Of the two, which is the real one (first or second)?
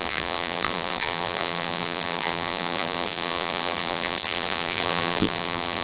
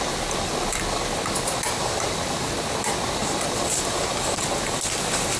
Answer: second